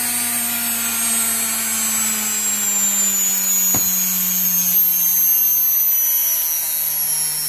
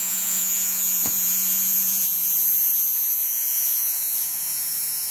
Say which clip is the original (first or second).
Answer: first